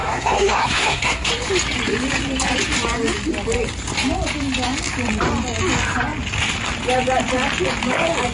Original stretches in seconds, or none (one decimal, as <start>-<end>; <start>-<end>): 1.3-8.3